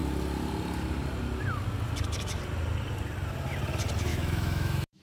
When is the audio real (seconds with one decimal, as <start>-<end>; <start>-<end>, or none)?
0.0-4.1